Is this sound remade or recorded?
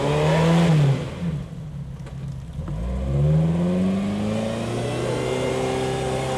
recorded